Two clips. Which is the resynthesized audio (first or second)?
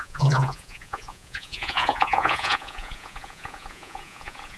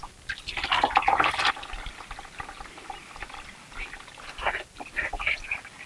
first